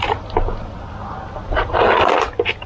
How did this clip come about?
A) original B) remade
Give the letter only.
A